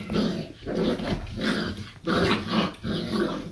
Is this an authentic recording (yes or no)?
yes